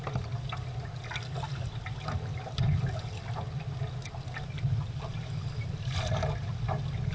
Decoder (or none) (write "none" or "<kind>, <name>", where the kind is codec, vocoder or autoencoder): none